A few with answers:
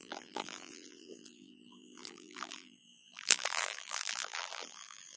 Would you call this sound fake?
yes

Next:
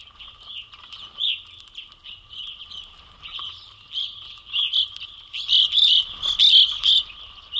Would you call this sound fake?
no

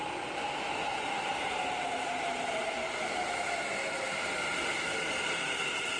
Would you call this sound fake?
yes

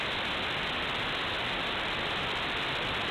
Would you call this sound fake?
no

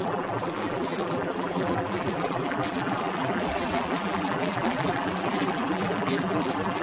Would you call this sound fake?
yes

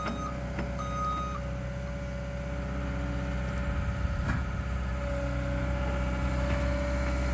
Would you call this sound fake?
no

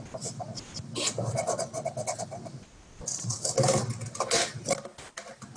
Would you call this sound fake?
no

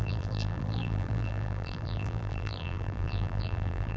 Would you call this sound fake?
yes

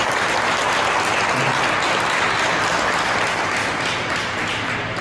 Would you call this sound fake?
no